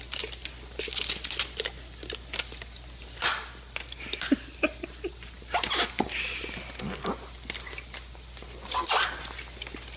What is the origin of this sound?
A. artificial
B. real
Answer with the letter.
B